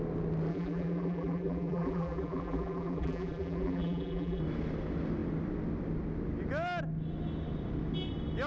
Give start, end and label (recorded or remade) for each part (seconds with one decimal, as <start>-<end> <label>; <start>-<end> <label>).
0.0-0.5 recorded; 0.5-4.4 remade; 4.4-8.5 recorded